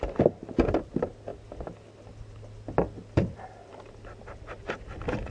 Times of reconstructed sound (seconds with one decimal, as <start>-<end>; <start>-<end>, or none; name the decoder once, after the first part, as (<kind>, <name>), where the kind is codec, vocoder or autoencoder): none

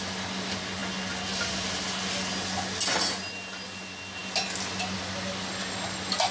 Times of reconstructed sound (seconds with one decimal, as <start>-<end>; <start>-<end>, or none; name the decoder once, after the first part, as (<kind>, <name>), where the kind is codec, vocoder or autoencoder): none

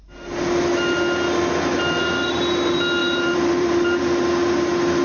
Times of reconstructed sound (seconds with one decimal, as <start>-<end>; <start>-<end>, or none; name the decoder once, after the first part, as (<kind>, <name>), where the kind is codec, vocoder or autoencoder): 3.0-4.0 (vocoder, BigVGAN v2)

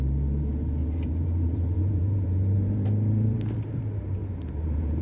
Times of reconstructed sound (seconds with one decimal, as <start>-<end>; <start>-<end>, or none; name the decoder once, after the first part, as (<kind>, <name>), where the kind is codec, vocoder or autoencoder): 0.8-3.8 (vocoder, BigVGAN v2); 4.2-5.0

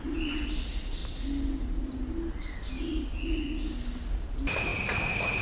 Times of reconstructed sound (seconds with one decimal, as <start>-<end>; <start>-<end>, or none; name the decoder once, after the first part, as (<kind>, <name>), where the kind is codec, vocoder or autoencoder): none

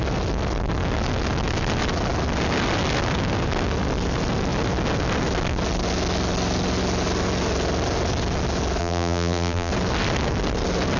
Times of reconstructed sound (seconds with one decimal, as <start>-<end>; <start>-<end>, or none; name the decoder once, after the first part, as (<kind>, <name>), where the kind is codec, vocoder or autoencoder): 8.8-9.7 (vocoder, BigVGAN v2)

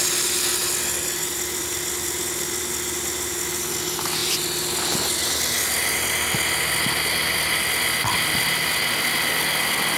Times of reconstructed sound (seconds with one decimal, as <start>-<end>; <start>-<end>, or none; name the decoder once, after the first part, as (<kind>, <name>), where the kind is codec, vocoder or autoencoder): 0.6-2.2 (vocoder, BigVGAN v2)